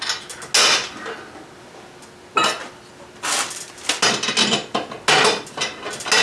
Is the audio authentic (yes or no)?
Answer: yes